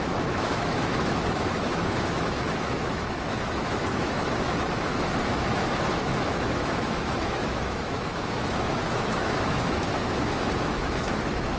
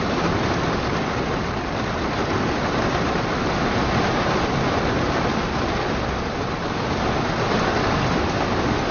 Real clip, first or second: second